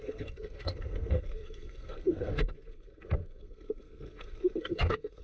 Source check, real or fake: fake